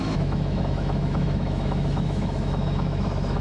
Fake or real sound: fake